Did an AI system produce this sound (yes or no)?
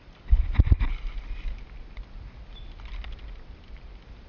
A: no